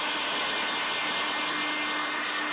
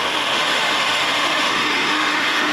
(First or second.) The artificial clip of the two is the second